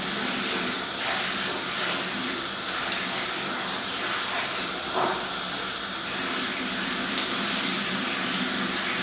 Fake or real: real